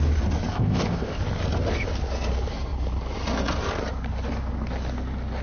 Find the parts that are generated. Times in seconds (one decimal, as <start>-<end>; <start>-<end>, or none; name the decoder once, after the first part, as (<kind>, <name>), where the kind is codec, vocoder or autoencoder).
0.5-1.2 (codec, ZipCodec)